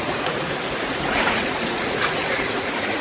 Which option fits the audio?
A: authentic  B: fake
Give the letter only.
B